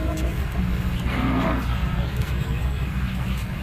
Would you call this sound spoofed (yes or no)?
yes